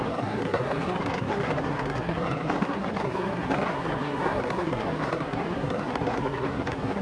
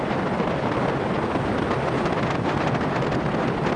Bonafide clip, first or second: second